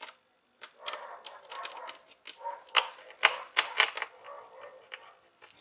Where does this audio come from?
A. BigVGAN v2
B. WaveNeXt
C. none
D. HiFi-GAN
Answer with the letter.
C